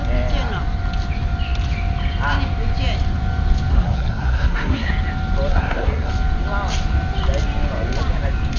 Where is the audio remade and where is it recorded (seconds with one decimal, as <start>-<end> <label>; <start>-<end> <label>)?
0.0-3.7 recorded; 3.7-4.9 remade; 4.9-5.5 recorded; 5.5-6.1 remade; 6.1-8.6 recorded